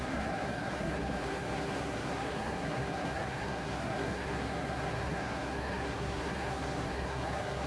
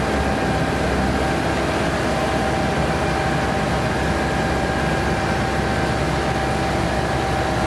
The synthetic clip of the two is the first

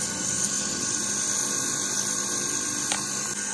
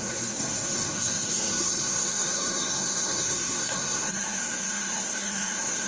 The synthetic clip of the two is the second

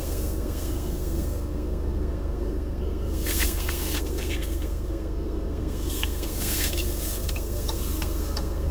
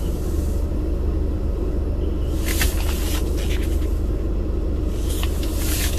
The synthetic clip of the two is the first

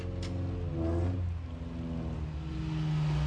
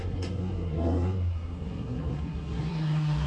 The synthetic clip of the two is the second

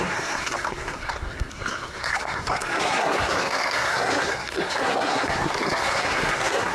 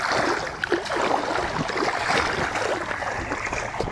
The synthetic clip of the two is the first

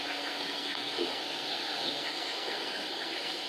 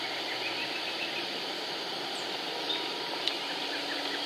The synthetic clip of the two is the first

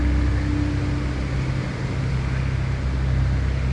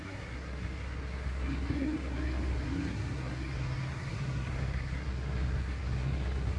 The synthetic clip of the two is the second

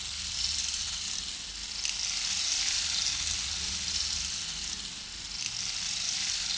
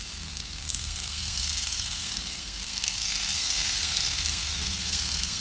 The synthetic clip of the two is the second